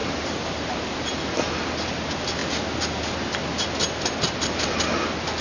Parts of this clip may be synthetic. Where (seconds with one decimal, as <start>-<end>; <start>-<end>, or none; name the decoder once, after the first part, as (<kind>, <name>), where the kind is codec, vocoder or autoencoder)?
0.0-1.1 (vocoder, BigVGAN v2)